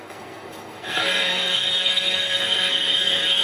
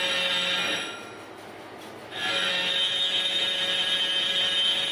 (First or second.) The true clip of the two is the second